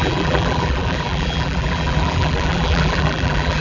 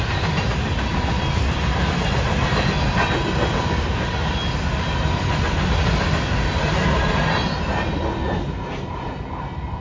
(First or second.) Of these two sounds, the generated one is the first